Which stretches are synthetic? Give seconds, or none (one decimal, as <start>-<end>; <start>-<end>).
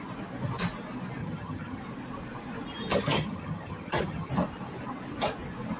1.2-1.8; 2.9-4.3